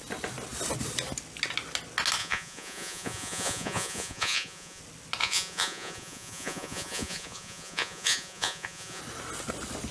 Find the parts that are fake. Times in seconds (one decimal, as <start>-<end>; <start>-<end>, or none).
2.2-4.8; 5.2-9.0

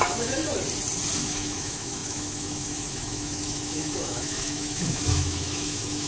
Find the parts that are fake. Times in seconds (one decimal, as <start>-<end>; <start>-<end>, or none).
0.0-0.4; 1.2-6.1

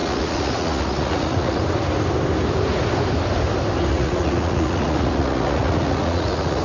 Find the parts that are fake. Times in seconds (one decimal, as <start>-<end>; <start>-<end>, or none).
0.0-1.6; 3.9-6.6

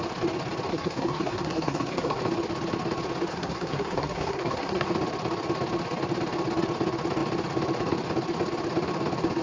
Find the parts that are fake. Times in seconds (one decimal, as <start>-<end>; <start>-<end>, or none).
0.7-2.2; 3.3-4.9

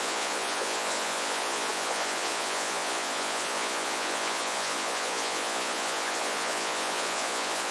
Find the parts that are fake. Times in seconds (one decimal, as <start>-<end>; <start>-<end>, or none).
0.0-7.7

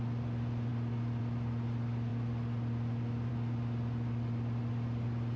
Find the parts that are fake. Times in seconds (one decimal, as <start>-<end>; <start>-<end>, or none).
none

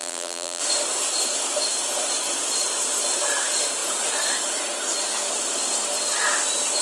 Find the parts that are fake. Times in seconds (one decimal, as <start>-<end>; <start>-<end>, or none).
0.0-0.6